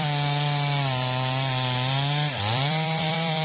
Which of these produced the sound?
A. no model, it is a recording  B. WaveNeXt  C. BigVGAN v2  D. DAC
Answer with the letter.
C